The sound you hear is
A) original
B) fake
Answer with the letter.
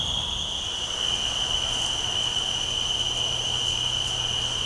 A